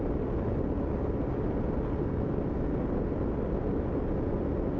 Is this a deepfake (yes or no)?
no